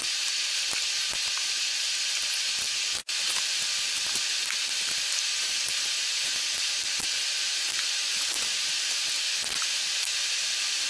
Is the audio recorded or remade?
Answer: recorded